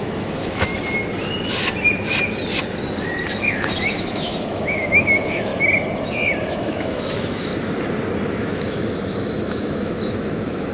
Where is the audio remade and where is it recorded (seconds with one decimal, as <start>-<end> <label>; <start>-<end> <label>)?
0.0-0.7 remade; 0.7-3.3 recorded; 3.3-5.5 remade; 5.5-6.5 recorded; 6.5-7.5 remade; 7.5-8.3 recorded; 8.3-10.7 remade